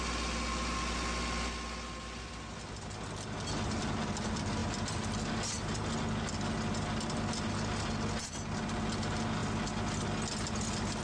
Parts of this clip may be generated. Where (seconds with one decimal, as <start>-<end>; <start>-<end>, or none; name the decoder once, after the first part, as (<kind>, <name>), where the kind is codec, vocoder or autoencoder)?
none